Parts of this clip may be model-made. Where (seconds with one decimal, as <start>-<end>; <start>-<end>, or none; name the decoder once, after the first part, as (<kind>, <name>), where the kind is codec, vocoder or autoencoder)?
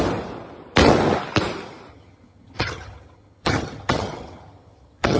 1.9-5.2 (vocoder, HiFi-GAN)